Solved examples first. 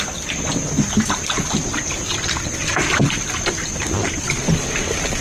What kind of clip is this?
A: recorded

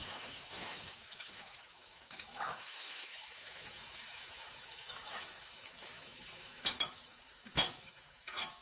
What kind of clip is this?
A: remade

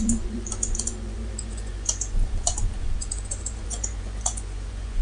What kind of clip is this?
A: remade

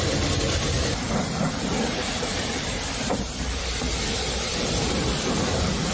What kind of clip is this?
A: remade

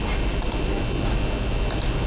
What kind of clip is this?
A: recorded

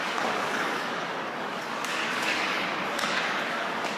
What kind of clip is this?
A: remade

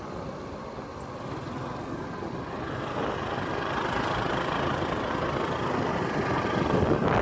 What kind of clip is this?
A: recorded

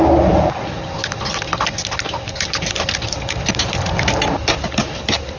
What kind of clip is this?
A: recorded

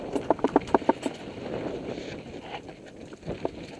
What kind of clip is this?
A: recorded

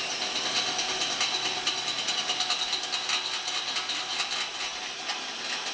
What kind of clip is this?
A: recorded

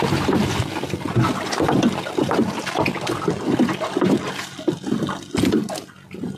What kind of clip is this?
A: recorded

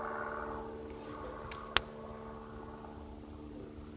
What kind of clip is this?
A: recorded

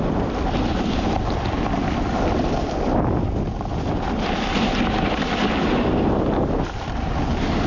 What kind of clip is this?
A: recorded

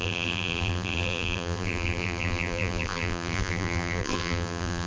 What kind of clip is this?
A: remade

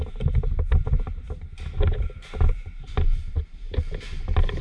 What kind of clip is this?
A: recorded